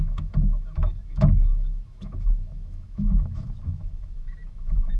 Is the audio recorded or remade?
remade